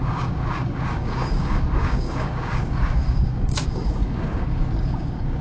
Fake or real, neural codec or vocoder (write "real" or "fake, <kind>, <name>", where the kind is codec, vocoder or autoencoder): fake, codec, DAC